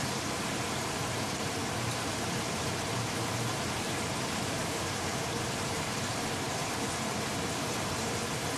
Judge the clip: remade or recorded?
remade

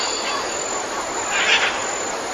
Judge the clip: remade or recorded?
recorded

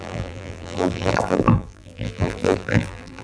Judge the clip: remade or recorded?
remade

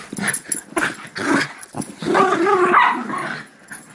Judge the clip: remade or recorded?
recorded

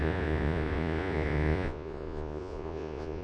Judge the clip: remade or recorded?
remade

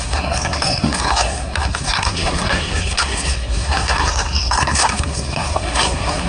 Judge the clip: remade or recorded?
remade